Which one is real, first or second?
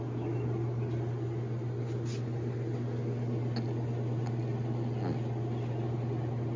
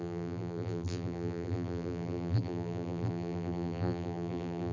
first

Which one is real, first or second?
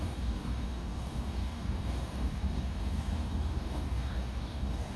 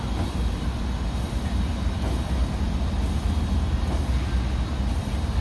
second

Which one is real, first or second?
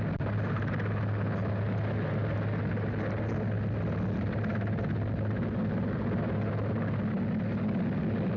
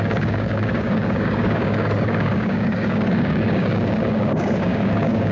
first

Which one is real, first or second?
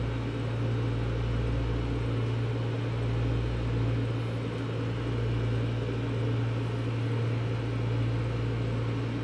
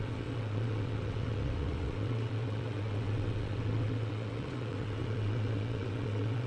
first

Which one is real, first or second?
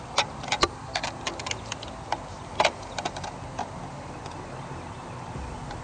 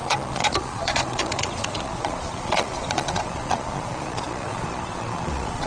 first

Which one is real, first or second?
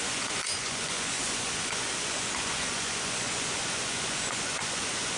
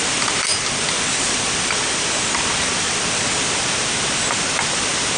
second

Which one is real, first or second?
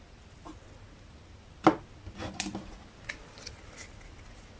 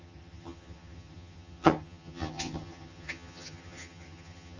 first